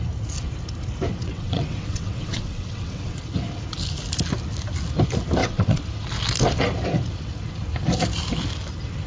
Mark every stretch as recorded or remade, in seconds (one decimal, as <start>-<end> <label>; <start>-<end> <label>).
0.0-1.2 recorded; 1.2-3.2 remade; 3.2-5.4 recorded; 5.4-5.9 remade; 5.9-9.1 recorded